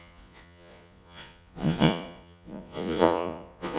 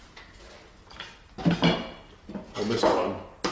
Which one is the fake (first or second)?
first